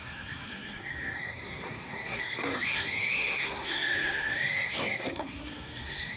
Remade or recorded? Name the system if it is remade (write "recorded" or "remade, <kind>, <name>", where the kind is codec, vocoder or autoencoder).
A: remade, codec, SNAC